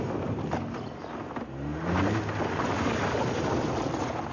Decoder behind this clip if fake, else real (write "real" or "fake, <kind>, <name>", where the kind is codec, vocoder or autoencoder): real